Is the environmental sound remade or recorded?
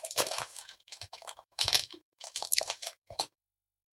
remade